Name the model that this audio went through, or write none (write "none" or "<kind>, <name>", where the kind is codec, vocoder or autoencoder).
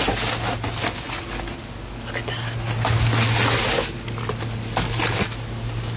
none